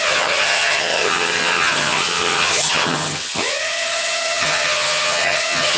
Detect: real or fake fake